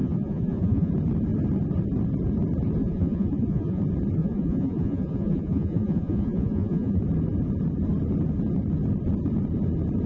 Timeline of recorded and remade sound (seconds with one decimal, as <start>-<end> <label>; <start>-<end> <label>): 0.0-0.9 remade; 0.9-2.8 recorded; 2.8-3.8 remade; 3.8-4.2 recorded; 4.2-7.0 remade; 7.0-10.1 recorded